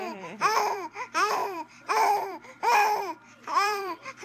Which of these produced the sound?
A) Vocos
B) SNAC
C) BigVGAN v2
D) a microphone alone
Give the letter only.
C